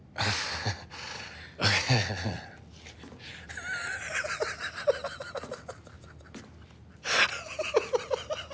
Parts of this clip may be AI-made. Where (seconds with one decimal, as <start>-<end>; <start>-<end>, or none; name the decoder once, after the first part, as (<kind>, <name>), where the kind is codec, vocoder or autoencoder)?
none